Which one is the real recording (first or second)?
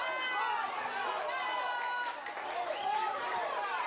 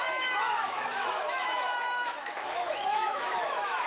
first